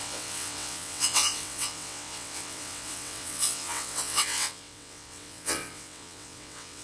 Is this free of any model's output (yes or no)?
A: no